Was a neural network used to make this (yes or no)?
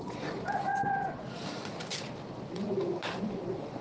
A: yes